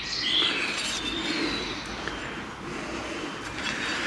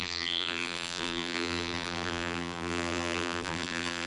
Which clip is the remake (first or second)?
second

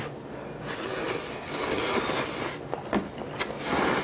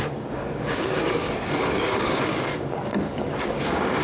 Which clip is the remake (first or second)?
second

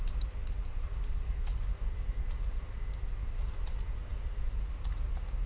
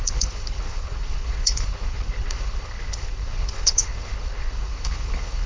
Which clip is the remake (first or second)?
second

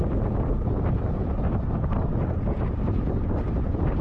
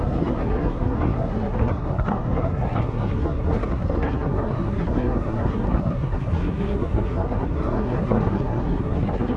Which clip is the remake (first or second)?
second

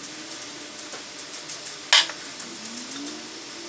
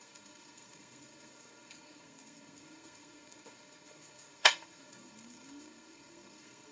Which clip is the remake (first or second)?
second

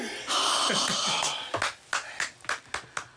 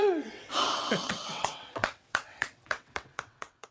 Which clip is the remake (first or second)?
second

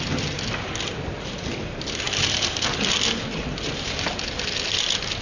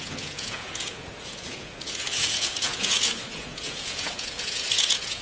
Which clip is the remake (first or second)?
second